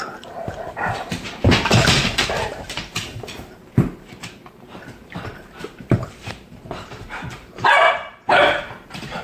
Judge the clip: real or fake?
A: fake